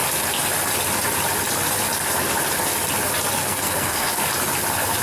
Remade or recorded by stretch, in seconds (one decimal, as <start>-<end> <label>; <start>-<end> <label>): 0.0-3.4 recorded; 3.4-4.1 remade; 4.1-5.0 recorded